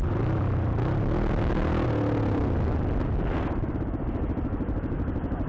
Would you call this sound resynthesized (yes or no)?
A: no